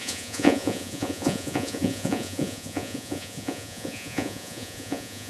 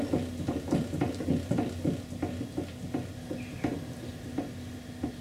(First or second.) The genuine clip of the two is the second